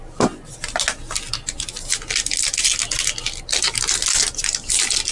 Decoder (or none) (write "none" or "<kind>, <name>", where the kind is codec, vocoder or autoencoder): none